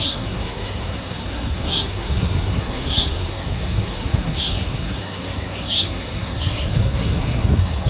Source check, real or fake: fake